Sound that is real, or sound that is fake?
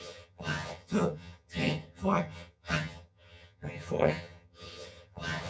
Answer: fake